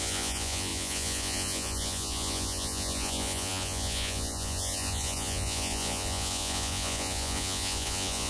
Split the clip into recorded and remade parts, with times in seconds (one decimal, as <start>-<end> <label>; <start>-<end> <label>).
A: 0.0-8.3 remade